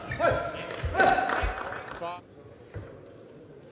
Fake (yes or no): no